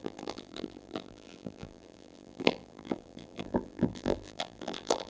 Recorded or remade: remade